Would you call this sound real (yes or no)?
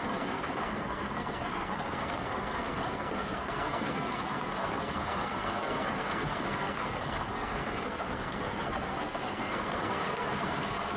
no